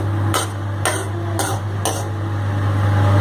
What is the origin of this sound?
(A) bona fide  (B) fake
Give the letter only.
A